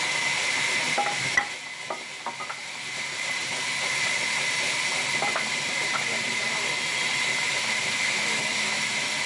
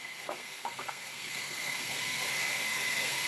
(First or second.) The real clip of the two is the first